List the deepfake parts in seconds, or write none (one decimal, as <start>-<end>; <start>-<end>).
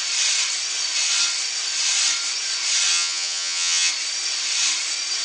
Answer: 2.9-3.9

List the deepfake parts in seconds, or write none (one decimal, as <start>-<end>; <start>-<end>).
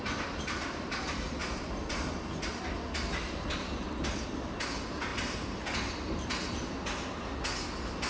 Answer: none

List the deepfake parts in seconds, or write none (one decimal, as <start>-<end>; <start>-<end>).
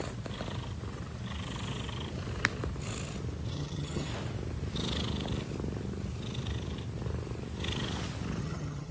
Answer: 3.5-4.1; 8.4-8.9